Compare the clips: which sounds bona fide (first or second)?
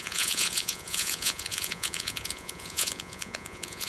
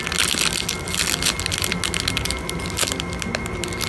second